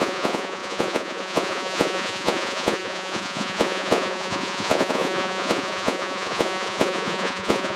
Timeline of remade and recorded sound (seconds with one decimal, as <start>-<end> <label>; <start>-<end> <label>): 0.0-7.8 remade